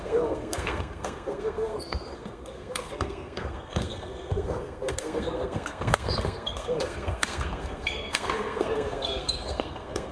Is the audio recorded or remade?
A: remade